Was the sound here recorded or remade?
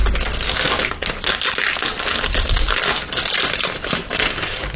recorded